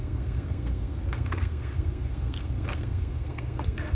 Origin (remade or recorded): remade